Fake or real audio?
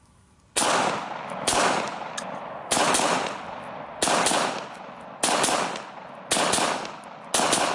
real